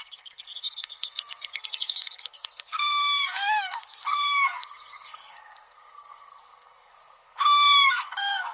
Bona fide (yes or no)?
no